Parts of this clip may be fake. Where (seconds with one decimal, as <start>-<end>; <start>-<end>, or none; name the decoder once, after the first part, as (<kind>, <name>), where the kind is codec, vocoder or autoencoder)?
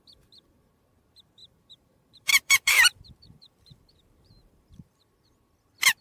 1.4-5.0 (vocoder, BigVGAN v2)